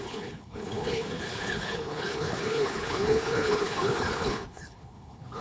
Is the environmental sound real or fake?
fake